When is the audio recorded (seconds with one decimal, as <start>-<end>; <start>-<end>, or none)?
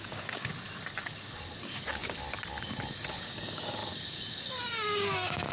0.5-3.2; 3.8-4.5